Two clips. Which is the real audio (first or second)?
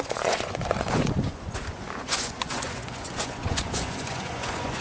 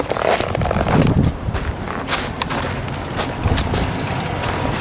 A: second